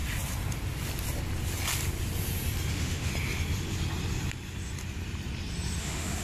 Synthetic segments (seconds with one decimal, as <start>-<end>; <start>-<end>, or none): 2.7-3.1; 5.8-6.2